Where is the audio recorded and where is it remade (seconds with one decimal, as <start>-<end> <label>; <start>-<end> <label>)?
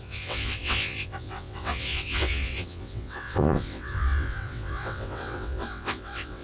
0.0-6.4 remade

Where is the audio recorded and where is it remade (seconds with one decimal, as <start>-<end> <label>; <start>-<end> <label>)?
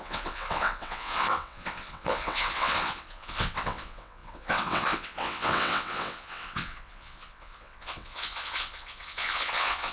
0.0-9.9 remade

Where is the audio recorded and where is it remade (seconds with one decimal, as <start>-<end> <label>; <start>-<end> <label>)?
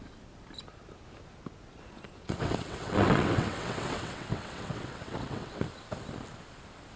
0.0-2.2 recorded; 2.2-5.6 remade; 5.6-7.0 recorded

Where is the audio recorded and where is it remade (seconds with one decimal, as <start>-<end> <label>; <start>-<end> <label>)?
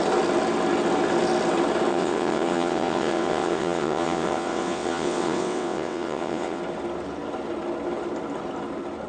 0.0-1.9 recorded; 1.9-6.6 remade; 6.6-9.1 recorded